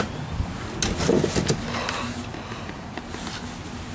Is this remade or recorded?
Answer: recorded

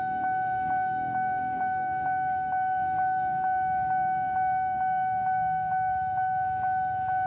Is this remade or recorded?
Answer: remade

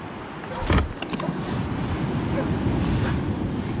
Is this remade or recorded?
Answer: recorded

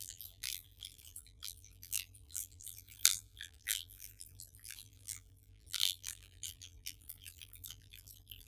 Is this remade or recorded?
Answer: remade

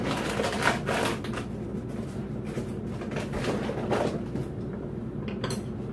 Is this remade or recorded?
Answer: recorded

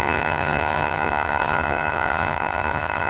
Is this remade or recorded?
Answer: remade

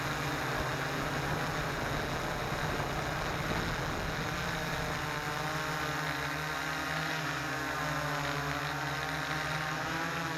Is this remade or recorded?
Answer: recorded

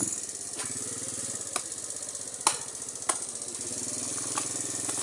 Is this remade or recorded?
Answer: recorded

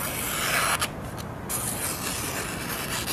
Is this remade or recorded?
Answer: recorded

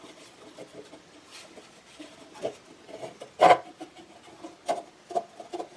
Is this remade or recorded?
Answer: recorded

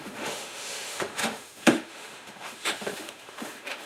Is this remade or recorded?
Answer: remade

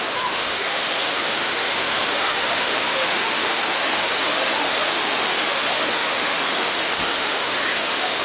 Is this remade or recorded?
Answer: remade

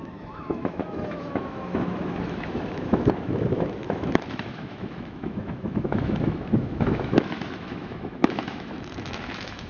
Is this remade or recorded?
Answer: remade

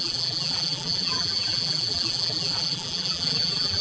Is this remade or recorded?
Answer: remade